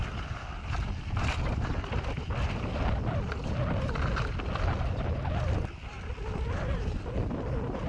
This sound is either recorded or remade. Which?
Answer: recorded